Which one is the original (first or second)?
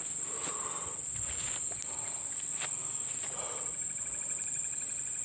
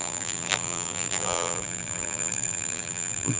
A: first